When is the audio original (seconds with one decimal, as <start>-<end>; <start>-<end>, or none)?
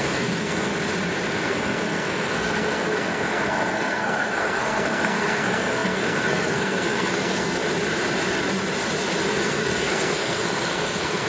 0.7-1.3; 7.6-9.3